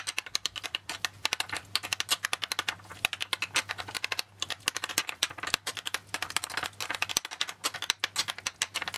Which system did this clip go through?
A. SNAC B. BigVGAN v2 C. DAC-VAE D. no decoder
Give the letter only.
D